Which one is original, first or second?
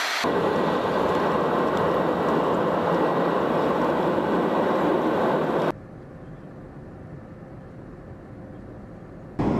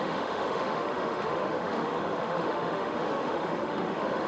first